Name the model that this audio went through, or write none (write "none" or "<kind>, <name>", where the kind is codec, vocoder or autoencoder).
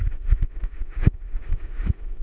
autoencoder, DAC-VAE